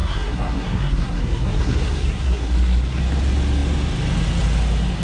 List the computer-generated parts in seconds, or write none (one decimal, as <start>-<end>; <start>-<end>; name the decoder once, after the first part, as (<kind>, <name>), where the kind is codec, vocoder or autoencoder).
0.0-3.0 (codec, SNAC)